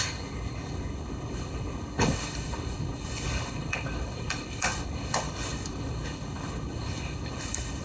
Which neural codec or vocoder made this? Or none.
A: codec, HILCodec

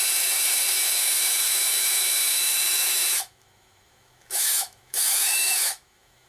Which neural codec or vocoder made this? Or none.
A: autoencoder, DAC-VAE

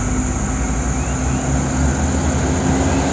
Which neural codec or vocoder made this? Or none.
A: none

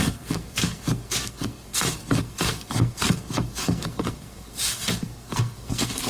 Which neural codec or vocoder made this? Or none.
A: codec, SNAC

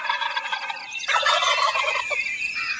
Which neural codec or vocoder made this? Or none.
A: none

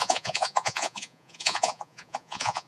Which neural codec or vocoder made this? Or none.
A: vocoder, Vocos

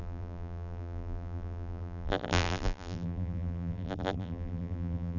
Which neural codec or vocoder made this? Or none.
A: vocoder, BigVGAN v2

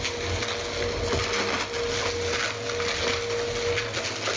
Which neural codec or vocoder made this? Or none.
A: none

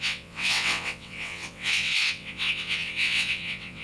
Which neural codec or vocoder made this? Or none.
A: vocoder, WaveNeXt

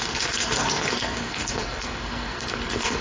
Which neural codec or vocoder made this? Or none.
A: codec, SNAC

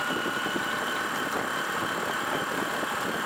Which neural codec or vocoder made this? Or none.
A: vocoder, BigVGAN v2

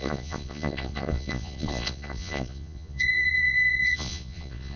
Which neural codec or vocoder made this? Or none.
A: vocoder, Vocos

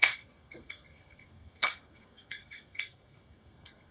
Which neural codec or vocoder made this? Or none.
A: codec, SNAC